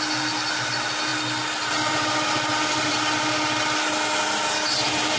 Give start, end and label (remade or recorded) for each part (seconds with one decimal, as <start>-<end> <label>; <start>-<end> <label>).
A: 0.0-5.2 recorded